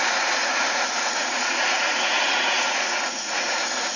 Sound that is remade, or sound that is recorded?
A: remade